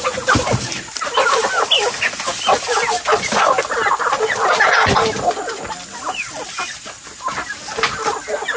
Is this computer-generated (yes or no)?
no